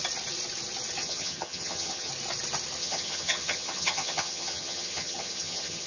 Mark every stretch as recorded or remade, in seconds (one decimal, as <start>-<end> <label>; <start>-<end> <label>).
0.0-1.0 recorded; 1.0-2.1 remade; 2.1-2.8 recorded; 2.8-5.9 remade